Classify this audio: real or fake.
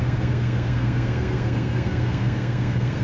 fake